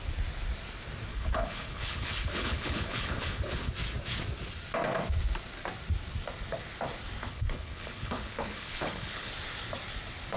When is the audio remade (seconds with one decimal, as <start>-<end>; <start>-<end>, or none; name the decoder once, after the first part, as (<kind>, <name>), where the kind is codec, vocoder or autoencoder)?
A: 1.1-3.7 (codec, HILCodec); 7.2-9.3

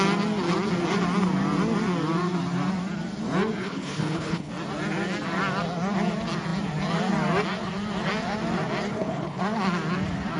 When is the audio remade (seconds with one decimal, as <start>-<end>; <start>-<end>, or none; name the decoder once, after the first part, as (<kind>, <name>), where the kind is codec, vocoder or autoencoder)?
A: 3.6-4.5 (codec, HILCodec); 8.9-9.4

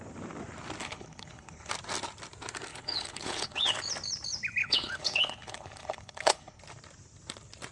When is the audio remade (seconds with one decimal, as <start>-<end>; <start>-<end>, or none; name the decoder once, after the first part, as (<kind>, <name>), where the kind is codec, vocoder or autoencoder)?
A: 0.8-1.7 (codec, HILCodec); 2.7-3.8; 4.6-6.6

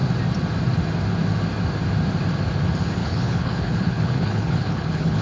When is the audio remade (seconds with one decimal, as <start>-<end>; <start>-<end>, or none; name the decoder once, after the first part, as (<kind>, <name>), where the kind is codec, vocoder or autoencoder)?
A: 3.0-5.2 (codec, HILCodec)

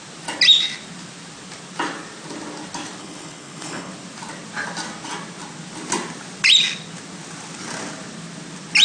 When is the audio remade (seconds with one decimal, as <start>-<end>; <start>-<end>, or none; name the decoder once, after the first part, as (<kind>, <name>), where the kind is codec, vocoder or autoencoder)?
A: 3.0-3.9 (codec, HILCodec)

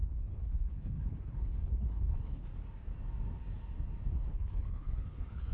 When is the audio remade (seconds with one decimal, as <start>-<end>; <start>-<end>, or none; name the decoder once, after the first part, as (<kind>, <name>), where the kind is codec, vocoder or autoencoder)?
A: 0.0-2.5 (codec, HILCodec); 4.2-5.5

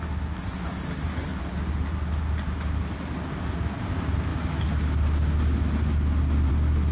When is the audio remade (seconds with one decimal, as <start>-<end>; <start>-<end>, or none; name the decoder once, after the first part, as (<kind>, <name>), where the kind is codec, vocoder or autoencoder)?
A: 1.1-1.6 (codec, HILCodec)